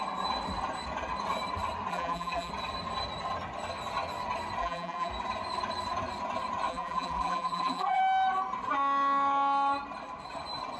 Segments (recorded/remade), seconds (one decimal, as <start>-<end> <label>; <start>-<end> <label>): 0.0-1.9 recorded; 1.9-2.5 remade; 2.5-4.6 recorded; 4.6-5.1 remade; 5.1-6.7 recorded; 6.7-8.0 remade; 8.0-10.8 recorded